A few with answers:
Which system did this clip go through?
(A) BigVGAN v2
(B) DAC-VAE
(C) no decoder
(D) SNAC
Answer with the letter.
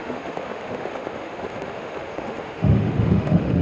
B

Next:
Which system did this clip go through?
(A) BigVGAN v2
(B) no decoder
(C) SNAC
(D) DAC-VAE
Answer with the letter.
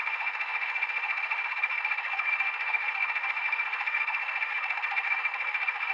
D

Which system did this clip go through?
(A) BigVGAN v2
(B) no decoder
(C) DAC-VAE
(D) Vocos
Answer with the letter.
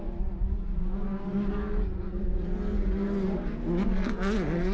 B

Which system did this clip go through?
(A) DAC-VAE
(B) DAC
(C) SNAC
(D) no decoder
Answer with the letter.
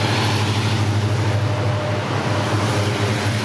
D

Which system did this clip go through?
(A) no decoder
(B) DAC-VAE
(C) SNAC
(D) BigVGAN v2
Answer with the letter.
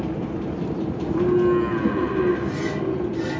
A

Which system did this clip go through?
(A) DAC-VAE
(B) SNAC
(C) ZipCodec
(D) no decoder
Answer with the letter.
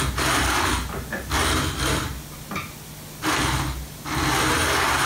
D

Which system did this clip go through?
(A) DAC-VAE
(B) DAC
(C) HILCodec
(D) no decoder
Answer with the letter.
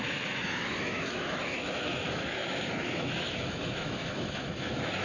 A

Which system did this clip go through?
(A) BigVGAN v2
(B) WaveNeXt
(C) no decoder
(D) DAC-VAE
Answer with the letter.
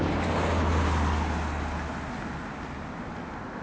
C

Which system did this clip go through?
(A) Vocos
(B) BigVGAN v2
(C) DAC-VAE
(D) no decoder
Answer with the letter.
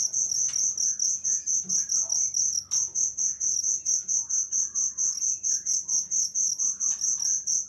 D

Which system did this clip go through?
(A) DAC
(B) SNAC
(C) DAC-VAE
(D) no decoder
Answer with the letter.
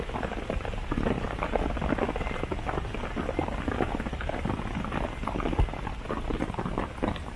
D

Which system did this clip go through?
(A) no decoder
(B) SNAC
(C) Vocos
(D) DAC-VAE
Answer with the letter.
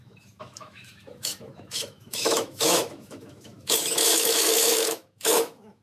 D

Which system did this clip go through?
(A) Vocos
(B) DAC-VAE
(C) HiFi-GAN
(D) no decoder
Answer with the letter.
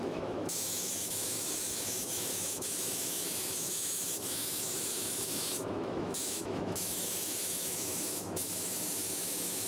B